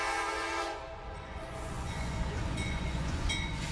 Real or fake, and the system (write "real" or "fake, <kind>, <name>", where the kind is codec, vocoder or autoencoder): fake, vocoder, Vocos